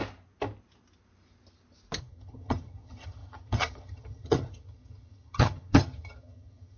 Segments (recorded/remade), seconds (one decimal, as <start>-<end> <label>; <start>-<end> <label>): 0.0-2.0 recorded; 2.0-6.8 remade